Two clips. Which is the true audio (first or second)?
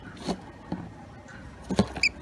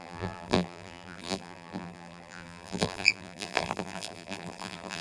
first